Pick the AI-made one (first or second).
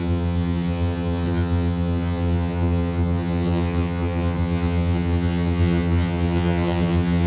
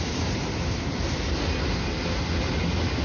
first